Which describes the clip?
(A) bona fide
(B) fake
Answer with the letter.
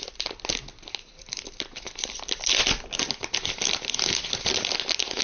A